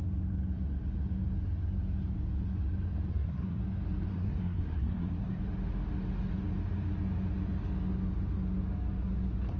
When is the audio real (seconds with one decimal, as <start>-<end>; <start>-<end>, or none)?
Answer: 0.0-3.1; 3.6-4.1; 5.4-9.6